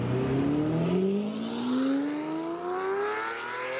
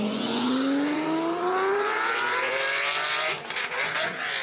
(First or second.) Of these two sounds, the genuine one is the first